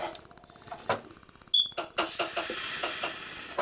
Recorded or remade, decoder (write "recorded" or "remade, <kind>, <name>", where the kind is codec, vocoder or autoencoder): recorded